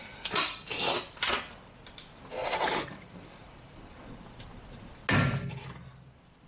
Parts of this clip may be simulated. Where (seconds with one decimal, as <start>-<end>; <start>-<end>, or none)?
2.4-4.1